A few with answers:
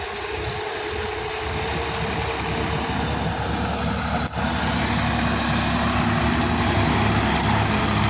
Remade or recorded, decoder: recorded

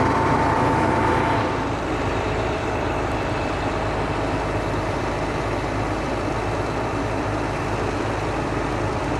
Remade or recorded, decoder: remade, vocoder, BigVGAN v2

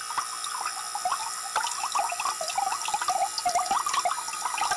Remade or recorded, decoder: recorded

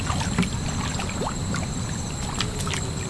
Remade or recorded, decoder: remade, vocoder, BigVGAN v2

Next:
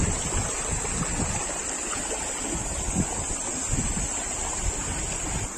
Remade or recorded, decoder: recorded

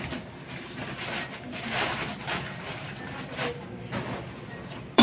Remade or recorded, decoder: remade, vocoder, BigVGAN v2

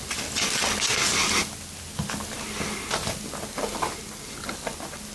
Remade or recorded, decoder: recorded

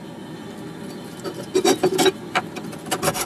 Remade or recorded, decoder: recorded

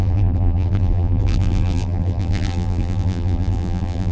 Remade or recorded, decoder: remade, vocoder, BigVGAN v2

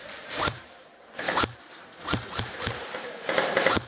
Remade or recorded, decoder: remade, vocoder, BigVGAN v2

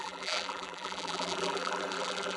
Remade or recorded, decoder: remade, vocoder, BigVGAN v2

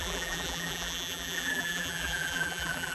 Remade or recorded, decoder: remade, vocoder, BigVGAN v2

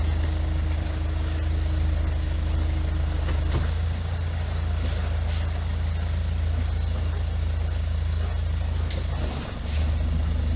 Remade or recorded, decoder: recorded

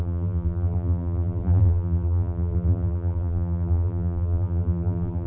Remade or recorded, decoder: remade, vocoder, BigVGAN v2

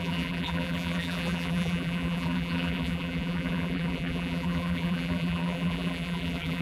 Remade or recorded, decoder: remade, vocoder, BigVGAN v2